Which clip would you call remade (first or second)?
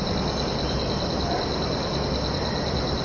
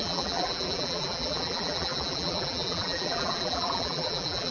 second